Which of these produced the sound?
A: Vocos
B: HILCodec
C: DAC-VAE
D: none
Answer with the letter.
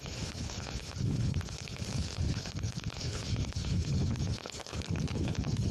B